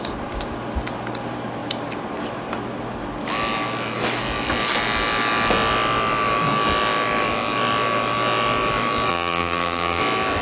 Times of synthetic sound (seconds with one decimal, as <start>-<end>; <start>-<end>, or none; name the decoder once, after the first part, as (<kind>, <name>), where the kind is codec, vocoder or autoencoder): 9.1-10.0 (vocoder, BigVGAN v2)